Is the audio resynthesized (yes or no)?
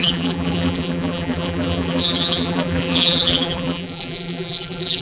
yes